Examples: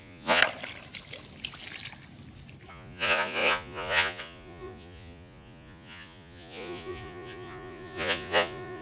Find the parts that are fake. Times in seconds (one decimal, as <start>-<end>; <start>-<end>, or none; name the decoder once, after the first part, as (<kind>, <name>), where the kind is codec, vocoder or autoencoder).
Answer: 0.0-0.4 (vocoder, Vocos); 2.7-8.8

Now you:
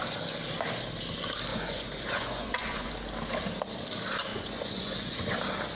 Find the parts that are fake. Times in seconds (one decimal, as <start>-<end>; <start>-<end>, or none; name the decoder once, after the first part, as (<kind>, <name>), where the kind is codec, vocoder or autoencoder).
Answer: 1.5-2.9 (vocoder, Vocos); 4.3-5.2

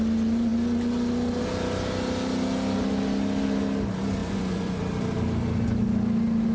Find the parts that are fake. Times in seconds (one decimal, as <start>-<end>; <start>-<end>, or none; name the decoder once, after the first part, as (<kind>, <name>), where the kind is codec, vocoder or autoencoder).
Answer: 4.2-4.8 (vocoder, Vocos)